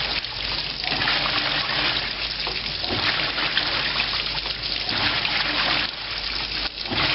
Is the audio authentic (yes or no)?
yes